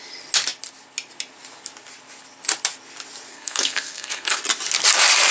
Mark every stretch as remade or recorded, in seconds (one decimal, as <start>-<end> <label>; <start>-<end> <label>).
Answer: 0.0-3.3 recorded; 3.3-4.4 remade; 4.4-5.3 recorded